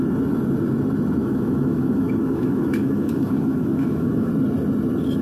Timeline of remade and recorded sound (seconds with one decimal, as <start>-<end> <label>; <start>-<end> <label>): 0.0-1.2 recorded; 1.2-4.3 remade; 4.3-5.2 recorded